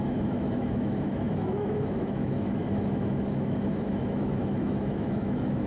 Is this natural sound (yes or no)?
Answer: no